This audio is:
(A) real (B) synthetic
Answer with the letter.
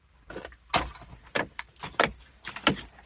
A